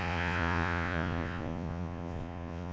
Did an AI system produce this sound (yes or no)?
yes